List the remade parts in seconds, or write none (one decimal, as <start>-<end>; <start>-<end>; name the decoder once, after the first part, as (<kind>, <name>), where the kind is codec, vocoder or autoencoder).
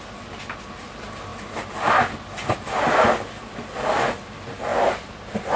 4.7-5.6 (vocoder, BigVGAN v2)